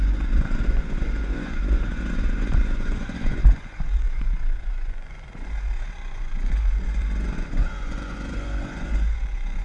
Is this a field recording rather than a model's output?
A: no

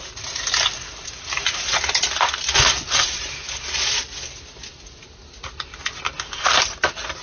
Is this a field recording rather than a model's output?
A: yes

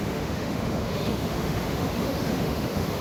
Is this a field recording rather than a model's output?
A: no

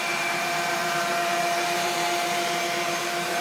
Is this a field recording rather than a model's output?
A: no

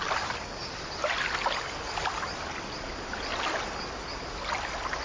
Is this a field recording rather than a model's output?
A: yes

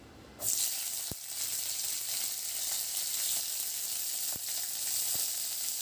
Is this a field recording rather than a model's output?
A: yes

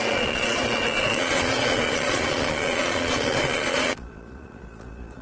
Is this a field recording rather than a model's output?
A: no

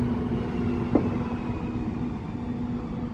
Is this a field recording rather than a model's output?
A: yes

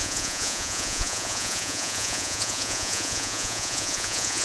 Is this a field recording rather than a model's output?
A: no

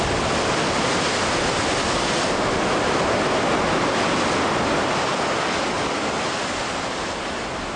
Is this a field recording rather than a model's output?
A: yes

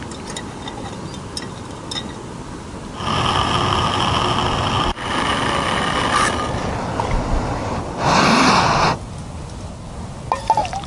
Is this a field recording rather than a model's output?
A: yes